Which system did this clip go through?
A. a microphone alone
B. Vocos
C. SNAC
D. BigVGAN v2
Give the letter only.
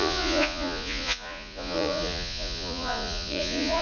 B